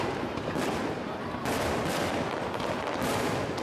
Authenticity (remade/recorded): recorded